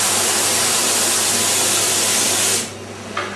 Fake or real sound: real